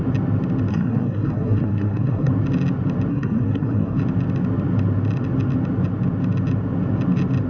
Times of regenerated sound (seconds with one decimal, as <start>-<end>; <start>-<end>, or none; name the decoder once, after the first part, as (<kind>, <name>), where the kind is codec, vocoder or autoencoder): 0.7-2.3 (codec, SNAC); 3.1-4.0